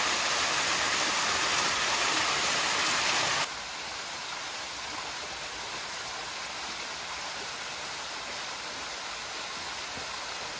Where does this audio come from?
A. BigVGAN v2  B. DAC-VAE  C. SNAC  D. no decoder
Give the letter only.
D